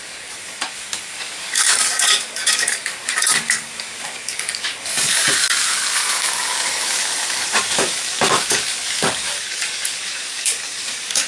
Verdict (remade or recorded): remade